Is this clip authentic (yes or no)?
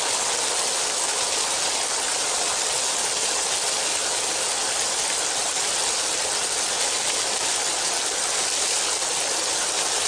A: yes